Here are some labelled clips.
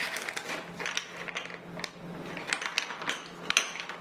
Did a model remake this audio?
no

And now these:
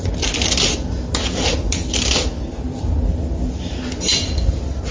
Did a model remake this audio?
no